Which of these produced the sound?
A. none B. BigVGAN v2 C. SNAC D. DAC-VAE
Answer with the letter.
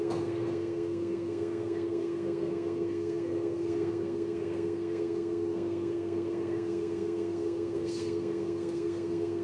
C